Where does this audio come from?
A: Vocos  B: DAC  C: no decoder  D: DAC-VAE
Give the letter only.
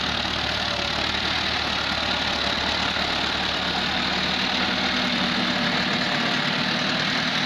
C